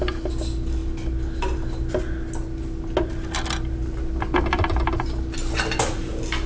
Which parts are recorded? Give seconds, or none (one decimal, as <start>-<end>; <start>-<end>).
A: 0.0-6.5